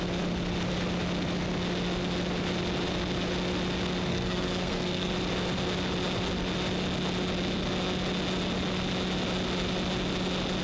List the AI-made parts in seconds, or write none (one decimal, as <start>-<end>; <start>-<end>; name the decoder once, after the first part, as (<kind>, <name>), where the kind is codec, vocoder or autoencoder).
4.1-5.1 (codec, SNAC)